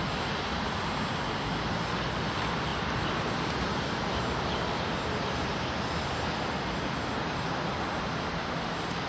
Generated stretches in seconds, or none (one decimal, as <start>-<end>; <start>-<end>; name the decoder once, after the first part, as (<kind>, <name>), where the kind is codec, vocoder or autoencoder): none